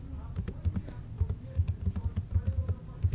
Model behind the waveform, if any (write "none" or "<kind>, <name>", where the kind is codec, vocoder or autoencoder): none